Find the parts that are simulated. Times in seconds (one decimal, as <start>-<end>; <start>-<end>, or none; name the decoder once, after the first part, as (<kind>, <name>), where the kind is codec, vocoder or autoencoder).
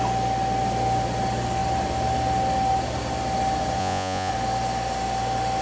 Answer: 3.8-4.3 (vocoder, Vocos)